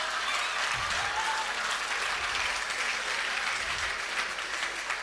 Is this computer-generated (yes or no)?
no